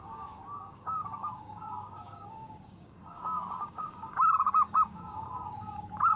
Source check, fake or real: fake